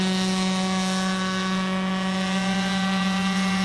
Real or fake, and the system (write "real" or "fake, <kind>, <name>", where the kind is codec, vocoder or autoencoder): fake, vocoder, Vocos